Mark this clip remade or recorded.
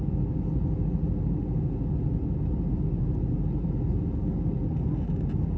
recorded